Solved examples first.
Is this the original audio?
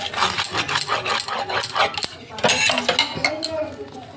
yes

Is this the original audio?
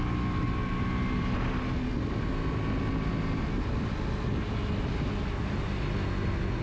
yes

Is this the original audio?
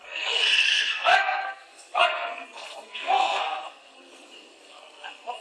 no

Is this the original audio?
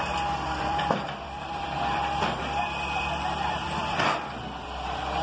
no